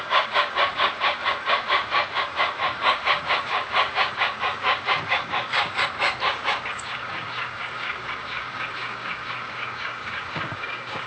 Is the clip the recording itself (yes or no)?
no